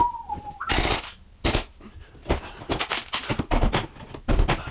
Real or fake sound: real